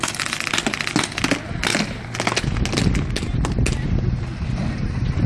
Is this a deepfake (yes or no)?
no